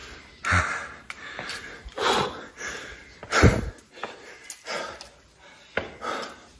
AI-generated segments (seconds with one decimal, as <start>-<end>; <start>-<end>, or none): none